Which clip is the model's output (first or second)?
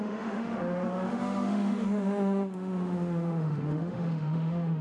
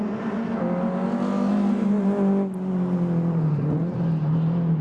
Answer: first